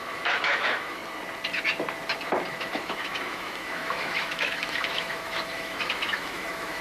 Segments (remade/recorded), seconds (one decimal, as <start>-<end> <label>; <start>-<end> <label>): 0.0-1.0 remade; 1.0-2.5 recorded; 2.5-6.8 remade